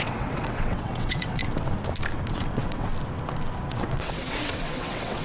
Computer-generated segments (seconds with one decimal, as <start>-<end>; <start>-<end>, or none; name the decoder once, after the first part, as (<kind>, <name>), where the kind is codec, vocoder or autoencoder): 0.0-1.4 (vocoder, WaveNeXt); 2.3-2.9; 3.7-5.2